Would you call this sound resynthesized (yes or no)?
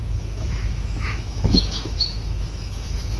yes